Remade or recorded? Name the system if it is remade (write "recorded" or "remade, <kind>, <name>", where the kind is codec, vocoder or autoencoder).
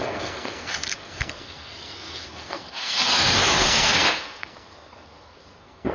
remade, codec, SNAC